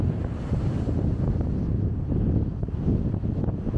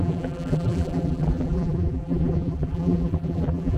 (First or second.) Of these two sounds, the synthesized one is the second